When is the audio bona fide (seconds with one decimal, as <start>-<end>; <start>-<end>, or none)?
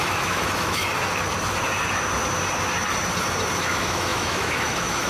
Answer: 0.9-3.6